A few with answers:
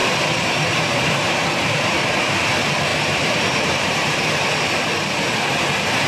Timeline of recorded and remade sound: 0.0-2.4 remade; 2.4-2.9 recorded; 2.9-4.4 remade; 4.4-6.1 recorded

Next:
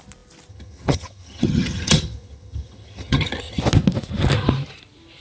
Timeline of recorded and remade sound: 0.0-0.5 recorded; 0.5-3.6 remade; 3.6-5.2 recorded

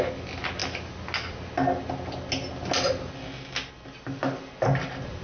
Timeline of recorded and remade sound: 0.0-5.2 recorded

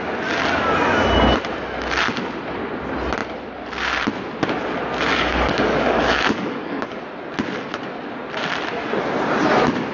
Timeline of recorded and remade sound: 0.0-5.1 recorded; 5.1-7.0 remade; 7.0-9.9 recorded